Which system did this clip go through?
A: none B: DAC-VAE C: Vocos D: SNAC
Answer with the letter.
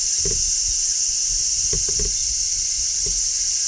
A